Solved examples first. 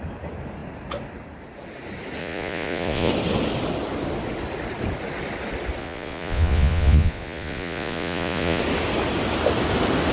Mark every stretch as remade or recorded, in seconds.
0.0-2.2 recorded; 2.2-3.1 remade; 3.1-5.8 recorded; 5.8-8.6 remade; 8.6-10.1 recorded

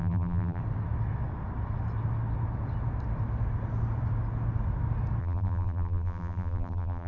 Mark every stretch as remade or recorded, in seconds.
0.0-0.6 remade; 0.6-5.2 recorded; 5.2-7.1 remade